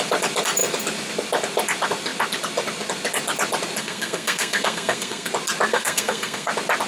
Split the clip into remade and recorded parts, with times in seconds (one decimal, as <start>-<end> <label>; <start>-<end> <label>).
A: 0.0-3.8 recorded; 3.8-5.3 remade; 5.3-5.7 recorded; 5.7-6.5 remade; 6.5-6.9 recorded